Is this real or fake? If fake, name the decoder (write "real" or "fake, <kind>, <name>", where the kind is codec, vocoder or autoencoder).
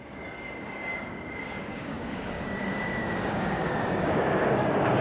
fake, codec, DAC